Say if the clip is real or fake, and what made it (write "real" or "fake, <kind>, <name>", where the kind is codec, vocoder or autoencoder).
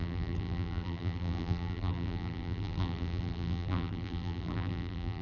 fake, vocoder, BigVGAN v2